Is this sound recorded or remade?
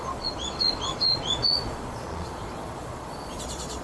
remade